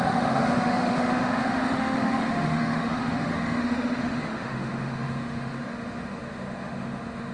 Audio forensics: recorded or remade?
remade